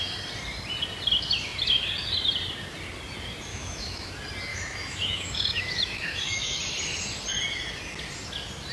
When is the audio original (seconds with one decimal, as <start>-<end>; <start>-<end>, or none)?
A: 0.0-3.5; 4.1-4.5; 6.6-8.7